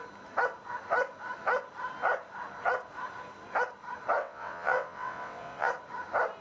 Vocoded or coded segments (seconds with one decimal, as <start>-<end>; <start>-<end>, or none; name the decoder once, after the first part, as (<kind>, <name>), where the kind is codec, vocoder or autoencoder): 4.2-5.7 (vocoder, WaveNeXt)